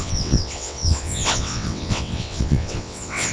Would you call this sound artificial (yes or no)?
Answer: yes